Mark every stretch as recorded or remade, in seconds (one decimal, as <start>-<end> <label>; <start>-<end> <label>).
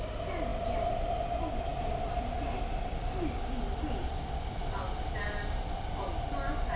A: 0.0-6.8 recorded